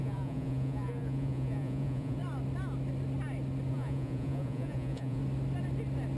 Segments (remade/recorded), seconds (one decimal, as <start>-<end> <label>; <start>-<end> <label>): 0.0-2.2 remade; 2.2-3.7 recorded; 3.7-5.2 remade; 5.2-6.2 recorded